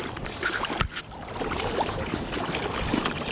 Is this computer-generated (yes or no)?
no